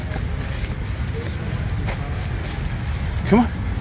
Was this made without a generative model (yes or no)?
yes